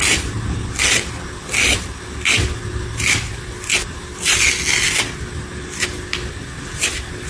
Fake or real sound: real